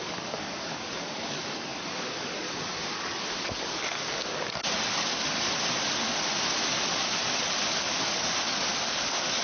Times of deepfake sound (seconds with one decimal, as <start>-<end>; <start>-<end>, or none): 0.0-5.2; 7.7-9.4